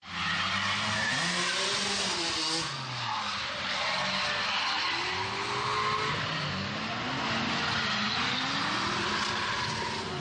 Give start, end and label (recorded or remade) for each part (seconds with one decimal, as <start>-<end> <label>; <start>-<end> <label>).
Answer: 0.0-10.2 recorded